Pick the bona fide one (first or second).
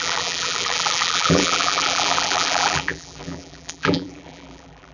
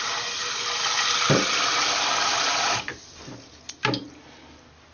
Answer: second